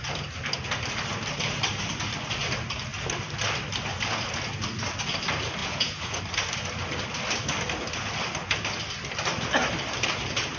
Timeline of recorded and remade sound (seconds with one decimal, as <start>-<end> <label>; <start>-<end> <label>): 0.0-5.6 recorded; 5.6-6.2 remade; 6.2-10.6 recorded